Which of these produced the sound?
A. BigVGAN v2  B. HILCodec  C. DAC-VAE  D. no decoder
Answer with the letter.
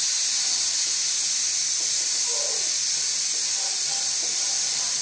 D